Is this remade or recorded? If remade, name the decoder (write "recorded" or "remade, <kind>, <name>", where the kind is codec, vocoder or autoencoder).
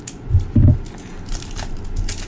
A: recorded